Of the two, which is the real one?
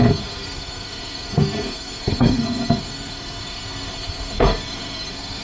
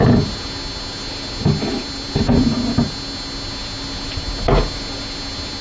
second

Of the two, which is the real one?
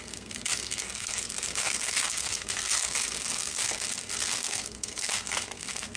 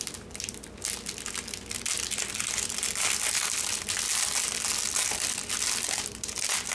second